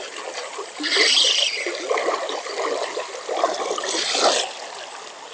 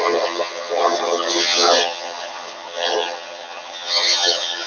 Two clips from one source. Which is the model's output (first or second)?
second